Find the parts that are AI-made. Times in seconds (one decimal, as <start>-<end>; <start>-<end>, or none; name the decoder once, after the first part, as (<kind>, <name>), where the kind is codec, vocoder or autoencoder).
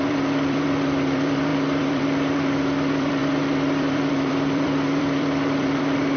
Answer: 0.0-6.2 (vocoder, BigVGAN v2)